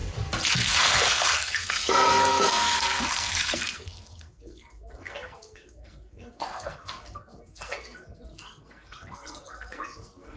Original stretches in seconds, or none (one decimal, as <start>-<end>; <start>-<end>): 0.0-0.5